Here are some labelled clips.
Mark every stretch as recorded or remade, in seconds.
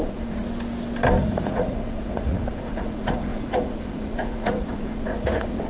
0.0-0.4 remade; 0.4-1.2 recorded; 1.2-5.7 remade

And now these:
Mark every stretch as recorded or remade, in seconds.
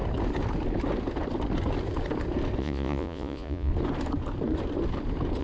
0.0-2.6 recorded; 2.6-3.7 remade; 3.7-5.4 recorded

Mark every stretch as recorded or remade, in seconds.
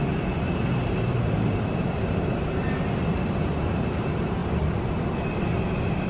0.0-4.4 remade; 4.4-6.1 recorded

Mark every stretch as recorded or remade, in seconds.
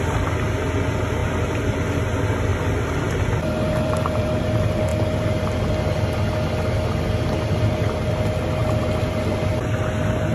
0.0-1.2 recorded; 1.2-2.0 remade; 2.0-2.5 recorded; 2.5-4.3 remade; 4.3-8.6 recorded; 8.6-9.5 remade; 9.5-10.3 recorded